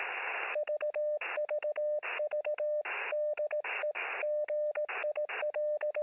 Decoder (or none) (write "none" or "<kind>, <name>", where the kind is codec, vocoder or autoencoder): none